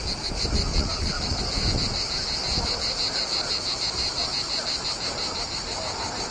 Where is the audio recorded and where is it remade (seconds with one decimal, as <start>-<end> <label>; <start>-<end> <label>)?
0.0-0.7 recorded; 0.7-1.4 remade; 1.4-6.3 recorded